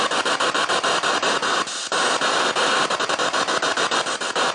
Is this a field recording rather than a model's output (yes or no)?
yes